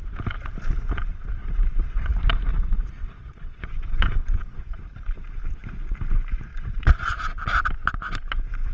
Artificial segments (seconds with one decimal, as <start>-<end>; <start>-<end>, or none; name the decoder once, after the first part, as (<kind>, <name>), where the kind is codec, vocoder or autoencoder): 1.4-2.1 (vocoder, Vocos); 2.5-4.8; 6.5-7.2